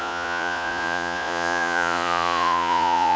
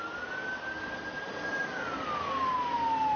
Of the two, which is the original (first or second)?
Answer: second